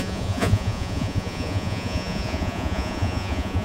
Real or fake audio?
fake